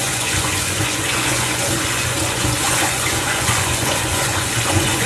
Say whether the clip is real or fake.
fake